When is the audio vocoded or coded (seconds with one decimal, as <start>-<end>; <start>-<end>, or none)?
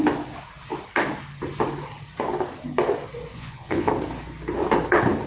3.3-3.9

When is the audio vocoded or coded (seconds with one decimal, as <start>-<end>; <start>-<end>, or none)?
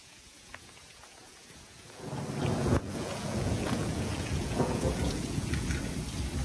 0.0-2.1; 2.6-5.9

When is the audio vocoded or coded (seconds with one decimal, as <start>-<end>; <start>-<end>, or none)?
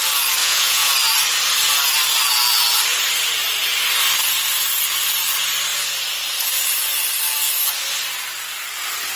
0.4-0.9